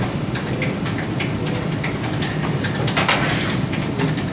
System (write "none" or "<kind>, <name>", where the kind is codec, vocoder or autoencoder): vocoder, BigVGAN v2